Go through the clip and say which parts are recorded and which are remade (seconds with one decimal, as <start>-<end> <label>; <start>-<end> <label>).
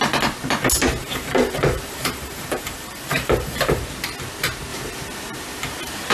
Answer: 0.0-1.0 recorded; 1.0-3.8 remade; 3.8-6.1 recorded